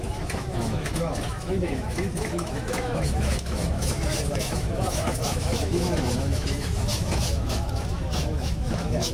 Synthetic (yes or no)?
yes